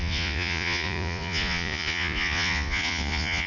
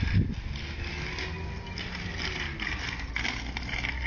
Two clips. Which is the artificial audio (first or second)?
first